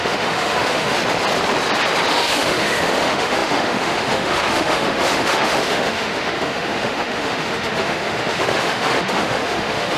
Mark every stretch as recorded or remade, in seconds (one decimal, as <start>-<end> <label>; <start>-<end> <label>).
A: 0.0-1.0 remade; 1.0-2.1 recorded; 2.1-10.0 remade